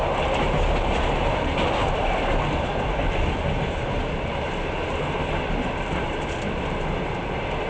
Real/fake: real